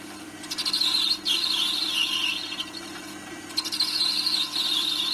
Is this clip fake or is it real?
real